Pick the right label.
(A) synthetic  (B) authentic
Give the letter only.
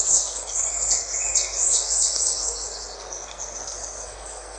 A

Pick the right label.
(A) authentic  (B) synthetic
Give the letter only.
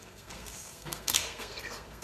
B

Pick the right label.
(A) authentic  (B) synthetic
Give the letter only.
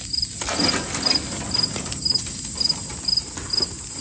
A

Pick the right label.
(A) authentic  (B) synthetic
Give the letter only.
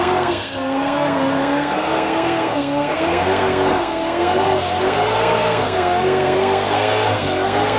B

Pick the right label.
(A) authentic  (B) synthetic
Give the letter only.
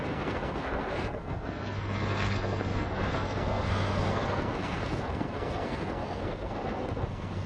B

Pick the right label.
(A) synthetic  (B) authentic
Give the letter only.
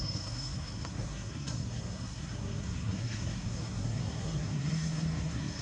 A